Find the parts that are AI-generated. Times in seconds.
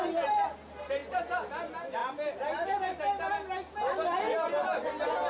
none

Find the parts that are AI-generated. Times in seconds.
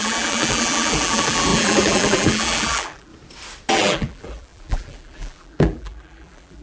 0.0-3.1 (vocoder, BigVGAN v2); 3.7-6.6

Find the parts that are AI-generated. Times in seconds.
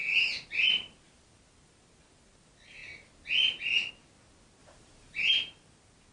0.0-1.4 (vocoder, BigVGAN v2); 4.6-5.3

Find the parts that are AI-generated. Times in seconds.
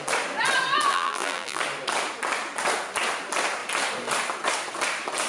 0.9-1.6 (vocoder, BigVGAN v2)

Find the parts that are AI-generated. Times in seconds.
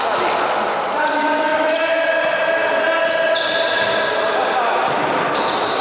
none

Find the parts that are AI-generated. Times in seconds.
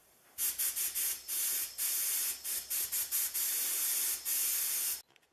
none